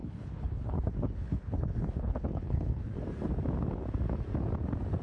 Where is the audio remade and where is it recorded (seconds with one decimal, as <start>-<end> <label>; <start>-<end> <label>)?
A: 0.0-3.0 remade; 3.0-5.0 recorded